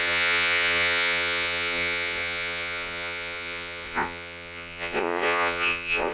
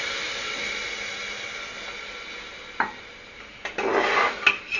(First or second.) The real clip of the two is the second